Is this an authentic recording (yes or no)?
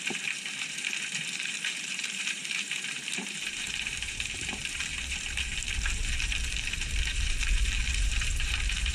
no